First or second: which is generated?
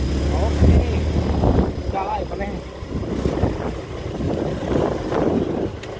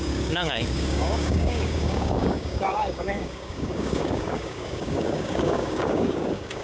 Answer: second